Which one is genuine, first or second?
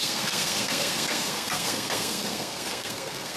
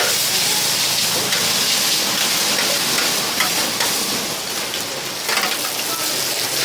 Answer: second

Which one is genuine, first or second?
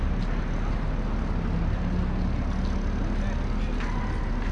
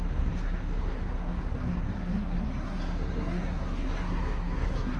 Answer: first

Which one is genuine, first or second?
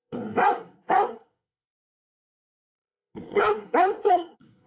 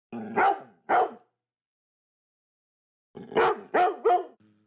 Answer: second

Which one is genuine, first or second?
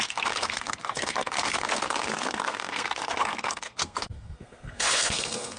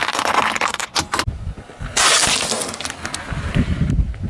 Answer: second